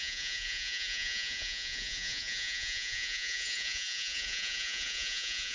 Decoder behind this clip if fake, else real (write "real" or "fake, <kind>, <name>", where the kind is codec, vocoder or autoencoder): fake, vocoder, Vocos